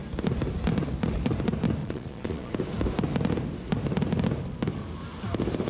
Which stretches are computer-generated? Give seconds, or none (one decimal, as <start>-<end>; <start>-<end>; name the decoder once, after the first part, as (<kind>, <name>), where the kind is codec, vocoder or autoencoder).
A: 1.8-2.5 (vocoder, Vocos)